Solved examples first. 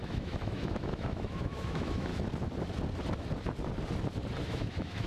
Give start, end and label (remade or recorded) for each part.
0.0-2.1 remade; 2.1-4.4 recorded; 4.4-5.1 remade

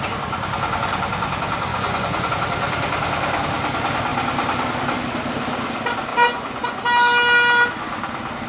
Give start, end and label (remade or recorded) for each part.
0.0-1.7 recorded; 1.7-2.3 remade; 2.3-6.1 recorded; 6.1-6.8 remade; 6.8-8.5 recorded

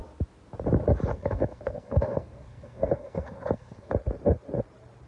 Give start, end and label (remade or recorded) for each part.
0.0-1.1 recorded; 1.1-3.9 remade; 3.9-5.1 recorded